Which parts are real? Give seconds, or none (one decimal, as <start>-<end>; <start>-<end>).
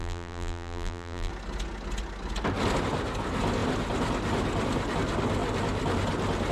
1.3-6.5